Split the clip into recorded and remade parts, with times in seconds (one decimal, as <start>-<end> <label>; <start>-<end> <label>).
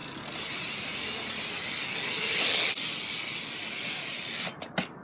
0.0-5.0 recorded